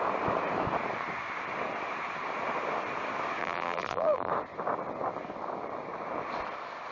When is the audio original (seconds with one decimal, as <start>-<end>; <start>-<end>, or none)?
0.0-3.4; 4.3-6.9